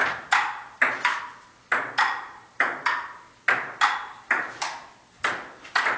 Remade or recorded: recorded